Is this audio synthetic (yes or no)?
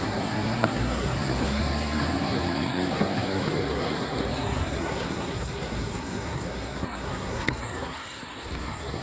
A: yes